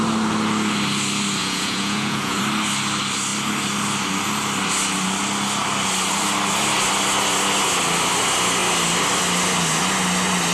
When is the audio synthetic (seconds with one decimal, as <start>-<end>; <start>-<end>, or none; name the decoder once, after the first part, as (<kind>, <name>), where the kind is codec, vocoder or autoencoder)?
1.4-2.4 (vocoder, Vocos)